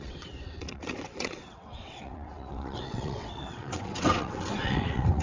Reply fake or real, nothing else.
fake